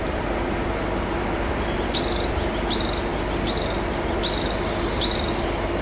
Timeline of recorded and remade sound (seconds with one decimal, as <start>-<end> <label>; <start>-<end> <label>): 0.0-5.8 recorded